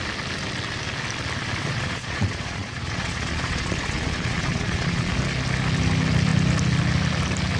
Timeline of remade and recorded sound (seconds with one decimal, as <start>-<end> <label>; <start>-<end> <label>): 0.0-1.6 recorded; 1.6-5.1 remade; 5.1-7.6 recorded